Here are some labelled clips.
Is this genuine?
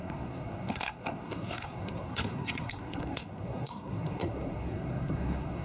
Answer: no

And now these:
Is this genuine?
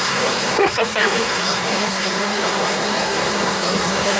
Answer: no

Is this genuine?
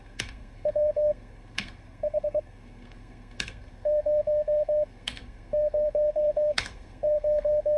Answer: no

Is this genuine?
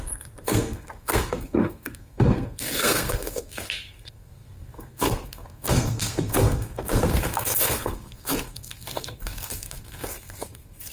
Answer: no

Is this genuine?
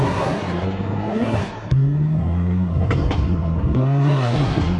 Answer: no